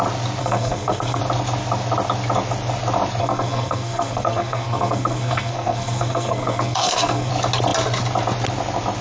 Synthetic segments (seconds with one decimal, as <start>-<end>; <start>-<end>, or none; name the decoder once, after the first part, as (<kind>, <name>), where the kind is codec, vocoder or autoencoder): 0.4-1.2 (codec, SNAC); 3.2-7.3